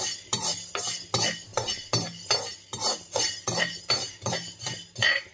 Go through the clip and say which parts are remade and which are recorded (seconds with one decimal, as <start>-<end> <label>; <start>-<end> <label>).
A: 0.0-5.3 recorded